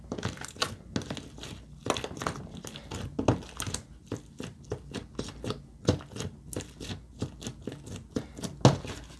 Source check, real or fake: real